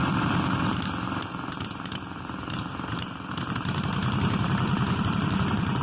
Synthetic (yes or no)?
yes